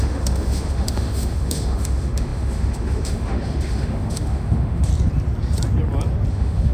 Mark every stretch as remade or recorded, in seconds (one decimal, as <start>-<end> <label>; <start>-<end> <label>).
0.0-4.9 remade; 4.9-6.3 recorded; 6.3-6.7 remade